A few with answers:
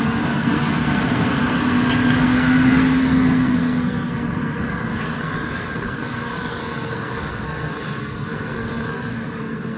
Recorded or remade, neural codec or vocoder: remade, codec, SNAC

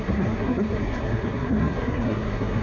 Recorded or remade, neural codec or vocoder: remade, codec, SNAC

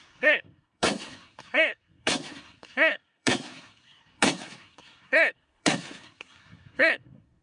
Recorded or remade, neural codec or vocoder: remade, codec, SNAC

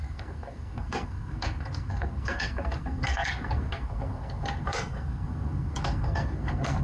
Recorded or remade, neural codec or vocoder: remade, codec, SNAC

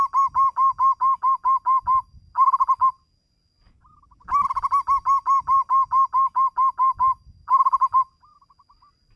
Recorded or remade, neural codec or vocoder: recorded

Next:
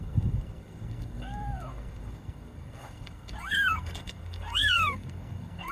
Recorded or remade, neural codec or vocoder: remade, codec, SNAC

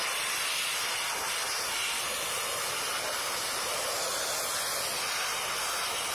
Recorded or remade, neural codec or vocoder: recorded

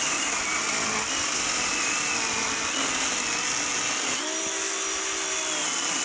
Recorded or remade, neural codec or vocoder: recorded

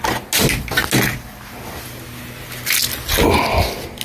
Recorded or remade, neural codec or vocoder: recorded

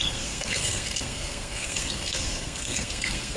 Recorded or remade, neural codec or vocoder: remade, codec, SNAC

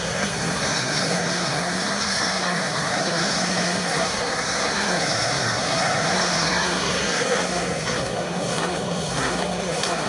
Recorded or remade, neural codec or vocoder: remade, codec, SNAC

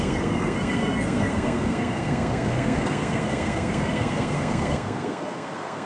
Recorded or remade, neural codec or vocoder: remade, codec, SNAC